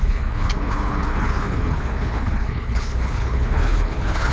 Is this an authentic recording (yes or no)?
no